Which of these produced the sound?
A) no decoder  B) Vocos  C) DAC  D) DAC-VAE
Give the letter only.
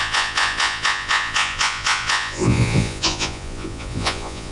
B